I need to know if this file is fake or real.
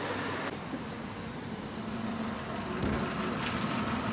real